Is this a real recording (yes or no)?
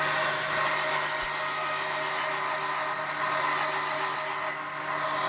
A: yes